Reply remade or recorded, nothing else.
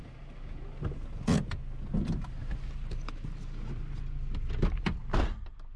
recorded